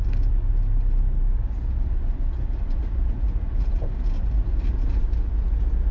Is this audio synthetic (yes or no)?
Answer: no